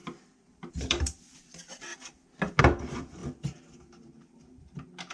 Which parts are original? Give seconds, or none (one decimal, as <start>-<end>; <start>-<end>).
1.9-2.6; 3.2-5.1